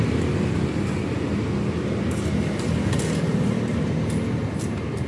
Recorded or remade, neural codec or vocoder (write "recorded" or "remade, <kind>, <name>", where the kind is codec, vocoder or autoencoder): recorded